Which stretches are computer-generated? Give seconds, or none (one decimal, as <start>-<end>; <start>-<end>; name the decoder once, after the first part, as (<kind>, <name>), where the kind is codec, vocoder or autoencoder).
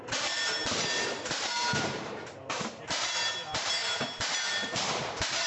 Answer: 0.0-5.5 (vocoder, BigVGAN v2)